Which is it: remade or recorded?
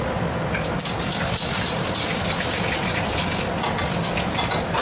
recorded